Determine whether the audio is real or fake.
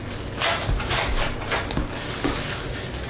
real